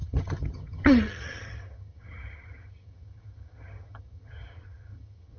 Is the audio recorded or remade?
remade